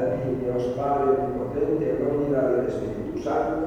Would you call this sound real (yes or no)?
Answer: yes